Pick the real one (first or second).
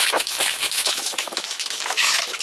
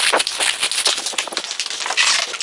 second